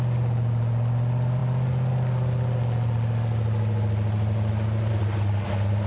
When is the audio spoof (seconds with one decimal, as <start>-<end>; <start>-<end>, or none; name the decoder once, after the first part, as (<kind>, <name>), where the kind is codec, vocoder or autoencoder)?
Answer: none